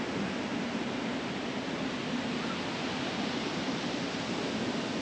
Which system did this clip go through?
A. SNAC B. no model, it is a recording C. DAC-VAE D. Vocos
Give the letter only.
B